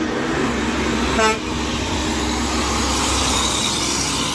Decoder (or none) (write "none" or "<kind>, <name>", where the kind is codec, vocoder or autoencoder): none